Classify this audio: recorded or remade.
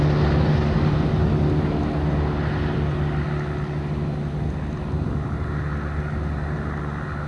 recorded